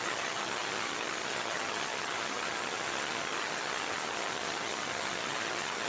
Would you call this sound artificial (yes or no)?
yes